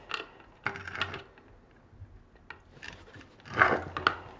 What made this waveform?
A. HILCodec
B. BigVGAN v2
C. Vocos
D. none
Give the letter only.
D